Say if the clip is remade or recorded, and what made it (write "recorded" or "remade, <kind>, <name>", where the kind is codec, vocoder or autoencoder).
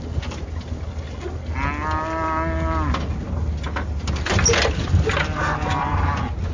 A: recorded